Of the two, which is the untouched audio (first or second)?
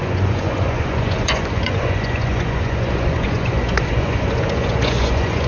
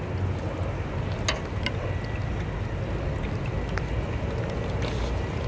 second